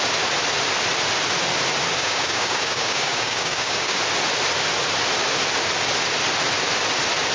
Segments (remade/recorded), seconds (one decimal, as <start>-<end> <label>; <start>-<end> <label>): 0.0-2.0 recorded; 2.0-4.0 remade; 4.0-7.3 recorded